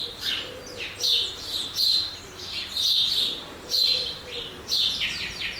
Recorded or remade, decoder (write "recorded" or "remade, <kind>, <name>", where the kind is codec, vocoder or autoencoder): recorded